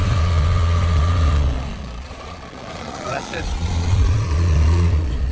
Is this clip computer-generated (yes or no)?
yes